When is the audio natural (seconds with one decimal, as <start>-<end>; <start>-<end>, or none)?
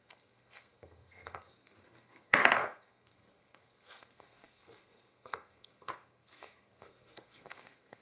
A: none